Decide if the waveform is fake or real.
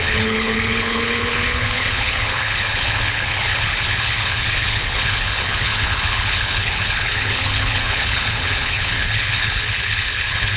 fake